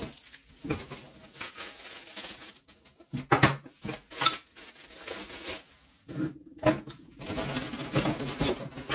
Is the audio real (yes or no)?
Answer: yes